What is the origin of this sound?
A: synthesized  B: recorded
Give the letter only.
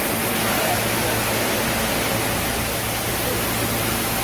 B